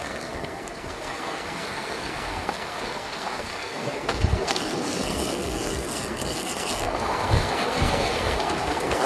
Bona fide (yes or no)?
no